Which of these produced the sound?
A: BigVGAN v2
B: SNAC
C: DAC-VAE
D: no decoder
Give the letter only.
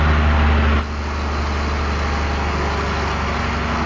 D